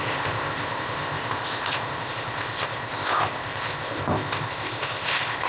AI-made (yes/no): yes